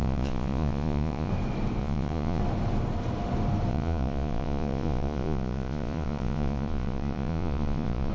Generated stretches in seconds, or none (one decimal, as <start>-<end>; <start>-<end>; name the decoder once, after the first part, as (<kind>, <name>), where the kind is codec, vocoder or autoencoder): 0.0-1.3 (vocoder, Vocos); 1.8-2.4; 3.7-8.1